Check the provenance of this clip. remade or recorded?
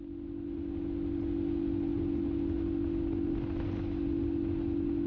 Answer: recorded